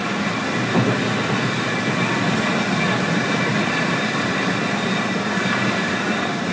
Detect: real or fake real